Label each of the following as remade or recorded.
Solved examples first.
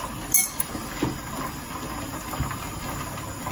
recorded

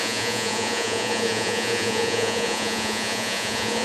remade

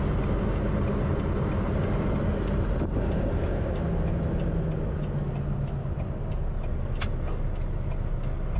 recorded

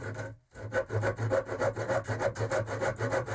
recorded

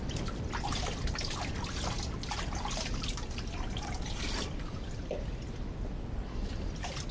recorded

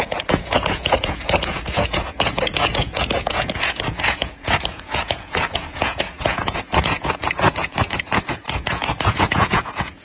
remade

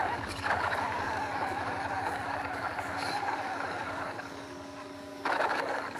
remade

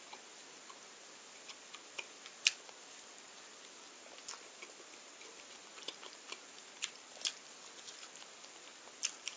recorded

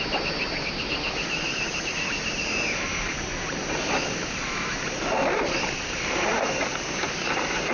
recorded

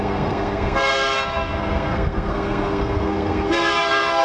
remade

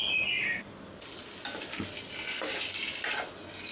recorded